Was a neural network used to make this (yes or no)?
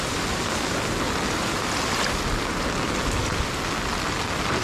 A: no